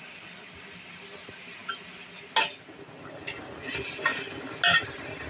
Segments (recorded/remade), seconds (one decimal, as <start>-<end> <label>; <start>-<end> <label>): 0.0-5.3 recorded